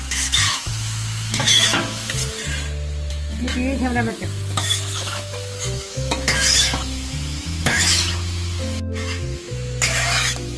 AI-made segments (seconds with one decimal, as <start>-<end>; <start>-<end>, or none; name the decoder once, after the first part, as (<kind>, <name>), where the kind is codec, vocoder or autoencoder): 0.0-2.2 (autoencoder, DAC-VAE); 3.1-3.5; 4.1-10.6